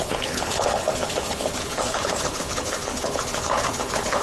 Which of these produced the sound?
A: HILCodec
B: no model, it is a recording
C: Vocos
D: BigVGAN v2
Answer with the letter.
A